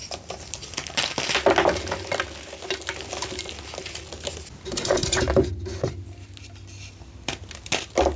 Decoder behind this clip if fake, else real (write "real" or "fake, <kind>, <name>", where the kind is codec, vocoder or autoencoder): real